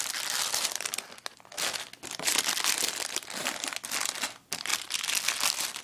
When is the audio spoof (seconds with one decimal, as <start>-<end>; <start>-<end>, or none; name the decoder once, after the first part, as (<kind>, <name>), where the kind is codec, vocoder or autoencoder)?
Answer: none